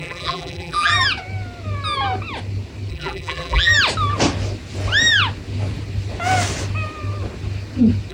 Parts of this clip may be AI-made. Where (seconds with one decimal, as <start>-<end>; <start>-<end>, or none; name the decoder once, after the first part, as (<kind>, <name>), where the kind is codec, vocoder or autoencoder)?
0.0-0.9 (vocoder, BigVGAN v2); 2.9-3.7